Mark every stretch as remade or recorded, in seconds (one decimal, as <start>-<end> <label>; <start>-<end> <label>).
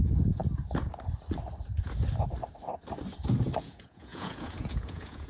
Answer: 0.0-0.4 remade; 0.4-3.6 recorded; 3.6-5.3 remade